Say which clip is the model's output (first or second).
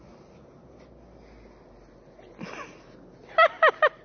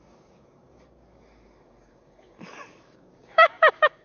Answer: second